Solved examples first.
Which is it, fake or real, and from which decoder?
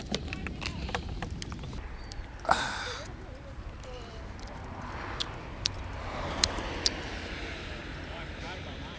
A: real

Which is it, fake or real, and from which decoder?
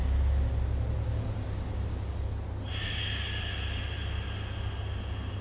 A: real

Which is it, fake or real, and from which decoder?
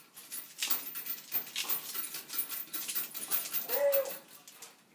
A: real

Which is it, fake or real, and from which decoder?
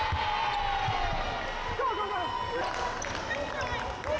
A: real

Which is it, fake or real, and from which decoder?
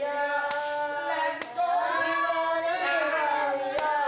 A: real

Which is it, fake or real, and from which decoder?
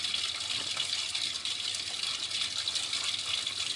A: real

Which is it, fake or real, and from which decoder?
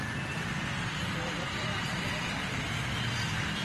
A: fake, vocoder, BigVGAN v2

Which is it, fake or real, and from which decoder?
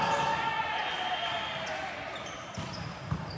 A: real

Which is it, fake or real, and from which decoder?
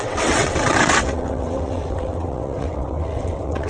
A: fake, vocoder, WaveNeXt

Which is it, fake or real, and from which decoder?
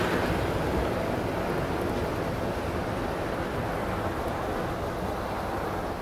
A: real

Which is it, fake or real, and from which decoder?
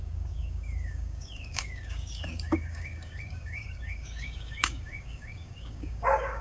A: fake, codec, DAC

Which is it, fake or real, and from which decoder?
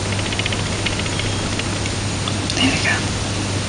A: real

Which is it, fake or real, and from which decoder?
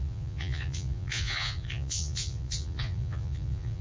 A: fake, vocoder, Vocos